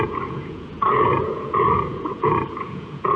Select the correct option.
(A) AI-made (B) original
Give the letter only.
A